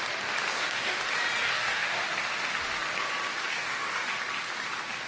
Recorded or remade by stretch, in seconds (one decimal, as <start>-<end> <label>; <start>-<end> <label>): 0.0-0.5 recorded; 0.5-1.0 remade; 1.0-1.4 recorded; 1.4-2.0 remade; 2.0-3.5 recorded; 3.5-4.1 remade; 4.1-5.1 recorded